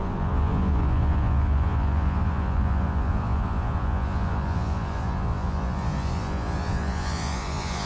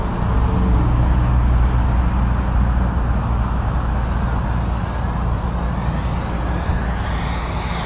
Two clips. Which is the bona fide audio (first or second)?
second